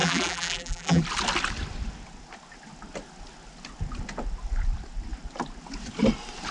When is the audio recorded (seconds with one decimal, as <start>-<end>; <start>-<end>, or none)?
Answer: 1.0-6.5